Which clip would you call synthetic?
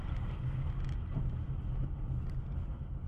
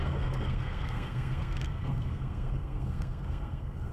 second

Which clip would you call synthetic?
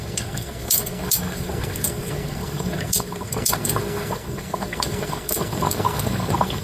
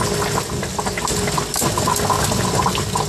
first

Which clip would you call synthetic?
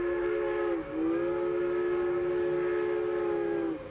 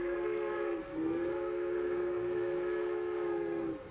second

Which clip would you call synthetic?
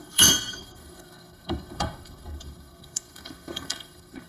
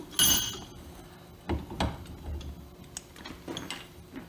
first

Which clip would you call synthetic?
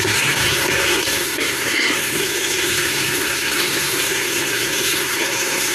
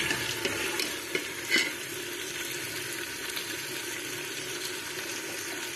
first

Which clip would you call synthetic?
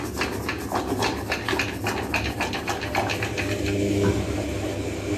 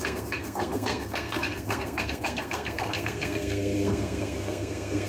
second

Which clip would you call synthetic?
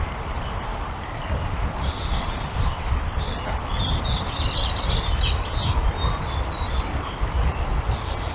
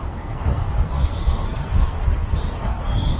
second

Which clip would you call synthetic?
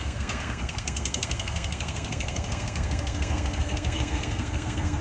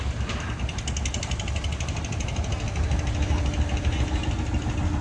first